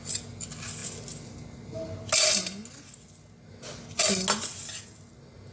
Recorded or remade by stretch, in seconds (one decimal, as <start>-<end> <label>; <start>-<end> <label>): 0.0-5.5 recorded